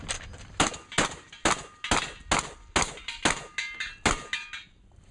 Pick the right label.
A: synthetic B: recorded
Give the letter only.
B